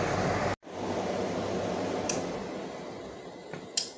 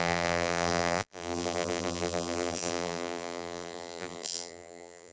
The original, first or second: first